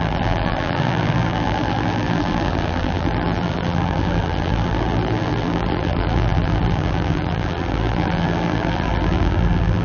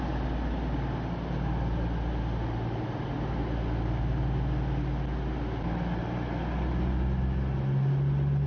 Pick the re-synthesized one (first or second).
first